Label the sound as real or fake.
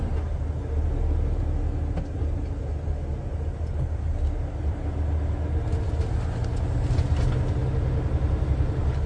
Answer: real